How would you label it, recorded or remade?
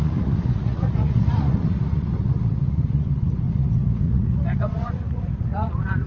remade